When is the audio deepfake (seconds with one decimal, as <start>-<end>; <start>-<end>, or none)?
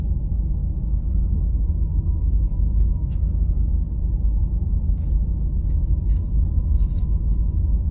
0.6-1.1